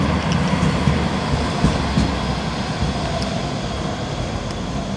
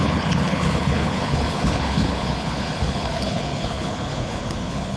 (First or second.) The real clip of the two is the first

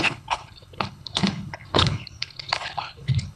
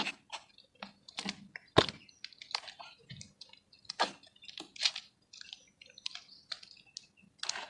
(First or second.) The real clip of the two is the second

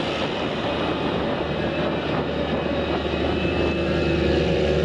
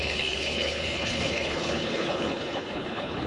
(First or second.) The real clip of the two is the first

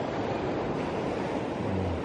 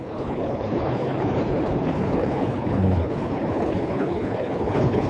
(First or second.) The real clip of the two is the first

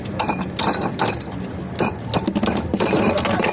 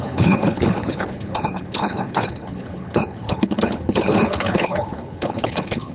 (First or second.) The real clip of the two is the first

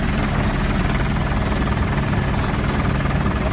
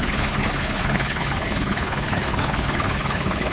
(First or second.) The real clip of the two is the first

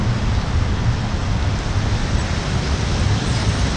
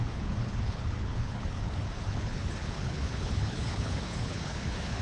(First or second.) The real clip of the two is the first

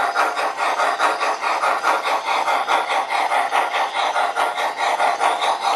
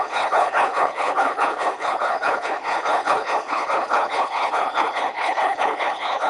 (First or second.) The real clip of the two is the first